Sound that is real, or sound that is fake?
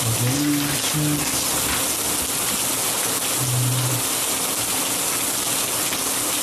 real